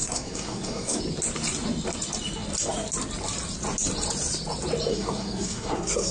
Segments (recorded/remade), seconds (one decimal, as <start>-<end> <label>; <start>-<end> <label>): 0.0-1.0 remade; 1.0-4.9 recorded; 4.9-6.1 remade